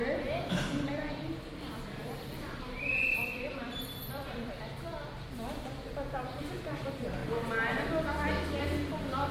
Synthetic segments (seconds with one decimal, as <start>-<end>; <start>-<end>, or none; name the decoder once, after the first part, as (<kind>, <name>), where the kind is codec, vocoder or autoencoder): 0.0-7.2 (vocoder, BigVGAN v2); 8.6-9.3